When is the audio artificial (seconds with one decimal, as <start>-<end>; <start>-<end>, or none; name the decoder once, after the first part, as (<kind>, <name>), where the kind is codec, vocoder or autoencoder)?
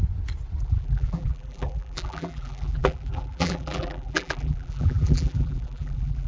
0.6-6.3 (vocoder, BigVGAN v2)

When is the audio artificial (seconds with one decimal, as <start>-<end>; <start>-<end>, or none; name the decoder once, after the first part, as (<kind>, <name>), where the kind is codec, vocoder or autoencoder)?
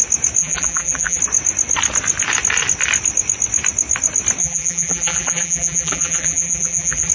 0.4-1.2 (vocoder, BigVGAN v2); 4.4-7.1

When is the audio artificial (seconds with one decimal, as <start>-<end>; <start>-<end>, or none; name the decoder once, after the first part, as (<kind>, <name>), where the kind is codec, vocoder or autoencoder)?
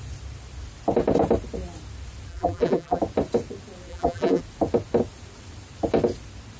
2.3-3.0 (vocoder, BigVGAN v2); 3.9-4.4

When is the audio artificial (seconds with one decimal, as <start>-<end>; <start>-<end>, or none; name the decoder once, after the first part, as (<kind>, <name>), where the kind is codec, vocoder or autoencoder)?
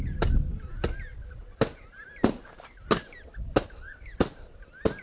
none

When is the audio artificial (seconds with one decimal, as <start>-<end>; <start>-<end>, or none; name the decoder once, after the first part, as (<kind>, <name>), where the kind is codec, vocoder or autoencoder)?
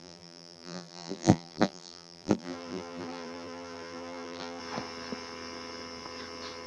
0.0-4.6 (vocoder, BigVGAN v2)